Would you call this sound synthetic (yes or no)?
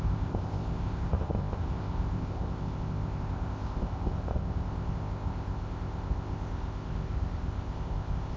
yes